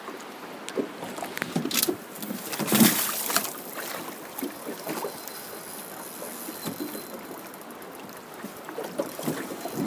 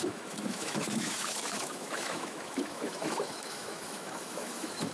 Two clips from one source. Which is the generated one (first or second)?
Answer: second